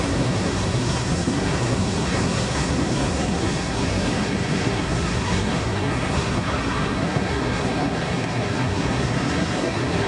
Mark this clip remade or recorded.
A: remade